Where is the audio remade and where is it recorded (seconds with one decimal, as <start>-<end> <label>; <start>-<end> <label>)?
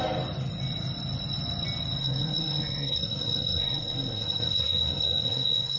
0.0-2.0 recorded; 2.0-5.8 remade